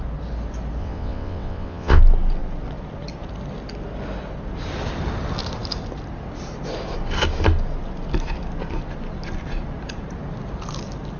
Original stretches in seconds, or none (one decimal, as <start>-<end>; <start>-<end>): 0.0-0.8; 2.0-11.2